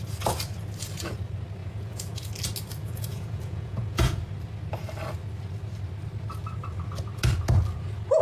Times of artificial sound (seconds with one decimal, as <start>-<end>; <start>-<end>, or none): 1.6-2.3; 2.8-4.2